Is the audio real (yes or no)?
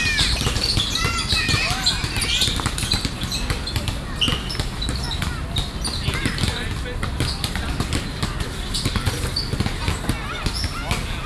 yes